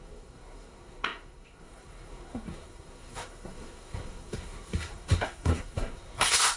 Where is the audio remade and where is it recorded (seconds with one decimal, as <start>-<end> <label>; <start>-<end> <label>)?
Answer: 0.0-6.6 remade